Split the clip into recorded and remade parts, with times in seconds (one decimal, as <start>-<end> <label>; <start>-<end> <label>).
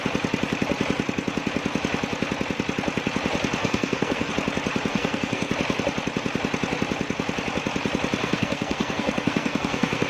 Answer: 0.0-3.6 recorded; 3.6-4.3 remade; 4.3-4.9 recorded; 4.9-5.5 remade; 5.5-8.2 recorded; 8.2-10.1 remade